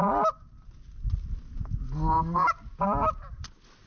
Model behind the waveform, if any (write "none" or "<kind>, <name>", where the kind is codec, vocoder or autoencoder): none